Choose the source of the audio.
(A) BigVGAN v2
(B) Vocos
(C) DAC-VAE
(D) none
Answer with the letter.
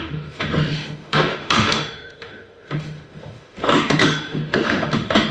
C